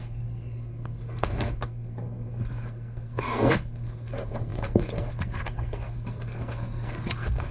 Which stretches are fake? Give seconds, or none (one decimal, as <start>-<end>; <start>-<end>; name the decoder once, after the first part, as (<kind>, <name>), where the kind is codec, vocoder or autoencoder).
0.0-7.5 (codec, SNAC)

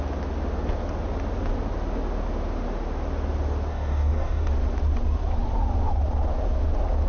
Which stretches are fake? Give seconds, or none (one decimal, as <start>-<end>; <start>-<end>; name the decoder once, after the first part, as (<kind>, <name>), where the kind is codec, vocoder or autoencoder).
3.7-4.5 (codec, DAC)